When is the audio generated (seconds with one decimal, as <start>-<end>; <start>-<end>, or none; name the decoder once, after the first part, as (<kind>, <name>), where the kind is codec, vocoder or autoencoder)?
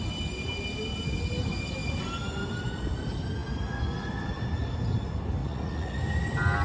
5.4-6.0 (vocoder, Vocos)